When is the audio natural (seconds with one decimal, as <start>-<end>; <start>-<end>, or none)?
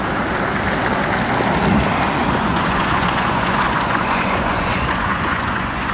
0.0-2.2